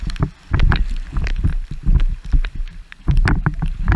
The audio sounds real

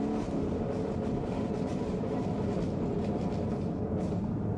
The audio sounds real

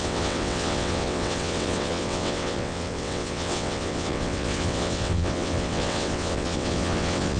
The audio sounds fake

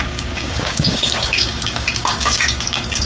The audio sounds fake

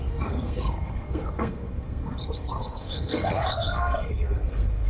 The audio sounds fake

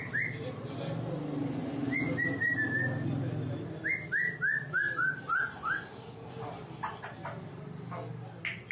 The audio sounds real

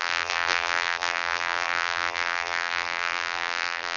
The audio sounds fake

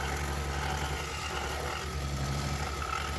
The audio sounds real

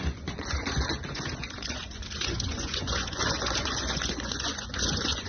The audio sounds fake